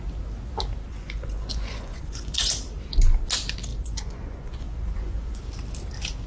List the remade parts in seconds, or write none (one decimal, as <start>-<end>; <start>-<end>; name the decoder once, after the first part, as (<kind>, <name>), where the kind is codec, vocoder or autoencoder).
0.9-2.5 (vocoder, Vocos); 3.7-5.4

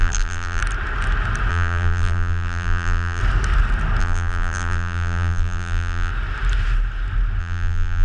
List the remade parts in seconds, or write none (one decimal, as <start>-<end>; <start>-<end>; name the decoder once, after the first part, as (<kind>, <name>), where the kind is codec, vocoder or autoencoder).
0.0-0.6 (vocoder, BigVGAN v2); 1.5-3.2; 4.0-6.1; 7.4-8.0

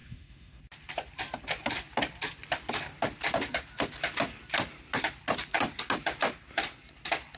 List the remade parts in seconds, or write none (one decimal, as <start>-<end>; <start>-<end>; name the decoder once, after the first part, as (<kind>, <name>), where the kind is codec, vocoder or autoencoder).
0.0-0.6 (autoencoder, DAC-VAE)

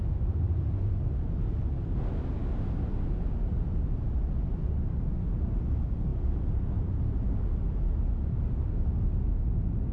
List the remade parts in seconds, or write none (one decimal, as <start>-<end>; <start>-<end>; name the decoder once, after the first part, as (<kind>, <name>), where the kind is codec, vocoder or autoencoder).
none

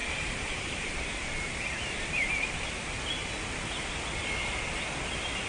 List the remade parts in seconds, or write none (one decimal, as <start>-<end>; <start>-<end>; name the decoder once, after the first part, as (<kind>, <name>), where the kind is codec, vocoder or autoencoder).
0.0-3.3 (vocoder, BigVGAN v2)